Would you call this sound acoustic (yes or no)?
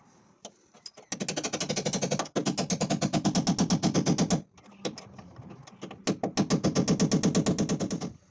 yes